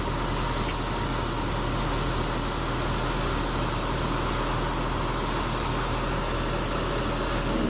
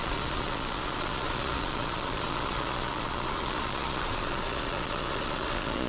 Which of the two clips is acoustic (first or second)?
first